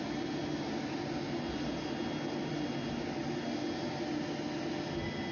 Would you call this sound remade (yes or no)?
no